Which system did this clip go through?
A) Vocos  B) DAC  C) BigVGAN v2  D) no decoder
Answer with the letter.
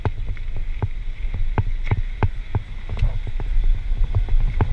D